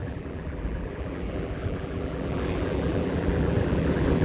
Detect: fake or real fake